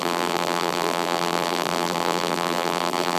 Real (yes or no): no